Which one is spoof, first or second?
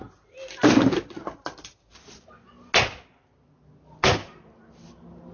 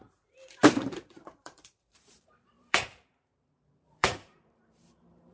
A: second